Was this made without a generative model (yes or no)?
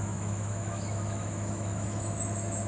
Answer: no